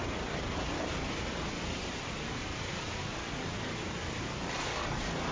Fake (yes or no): no